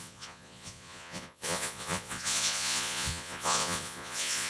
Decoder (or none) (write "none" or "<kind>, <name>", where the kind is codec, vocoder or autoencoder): vocoder, Vocos